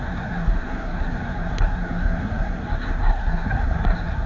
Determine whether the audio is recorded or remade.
remade